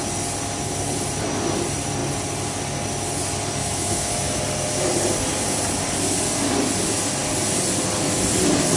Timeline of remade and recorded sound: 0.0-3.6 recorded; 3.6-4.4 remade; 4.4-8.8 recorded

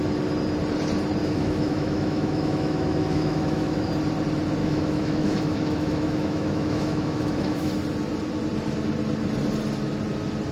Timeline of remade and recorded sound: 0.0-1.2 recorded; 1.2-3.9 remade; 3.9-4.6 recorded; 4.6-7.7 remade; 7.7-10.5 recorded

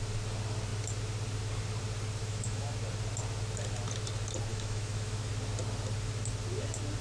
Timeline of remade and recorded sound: 0.0-2.2 recorded; 2.2-2.7 remade; 2.7-4.5 recorded; 4.5-5.3 remade; 5.3-7.0 recorded

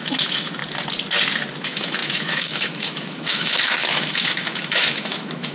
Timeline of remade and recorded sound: 0.0-0.6 remade; 0.6-1.6 recorded; 1.6-5.5 remade

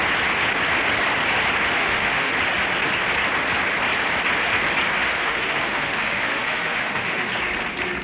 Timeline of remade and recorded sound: 0.0-1.8 recorded; 1.8-2.3 remade; 2.3-5.2 recorded; 5.2-7.3 remade; 7.3-8.0 recorded

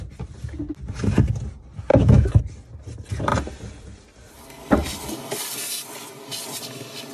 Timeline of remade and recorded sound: 0.0-1.9 recorded; 1.9-2.4 remade; 2.4-7.1 recorded

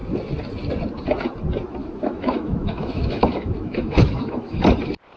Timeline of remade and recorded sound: 0.0-1.8 recorded; 1.8-4.6 remade; 4.6-5.2 recorded